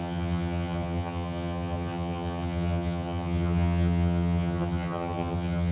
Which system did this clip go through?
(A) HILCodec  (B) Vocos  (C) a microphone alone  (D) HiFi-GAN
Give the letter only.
D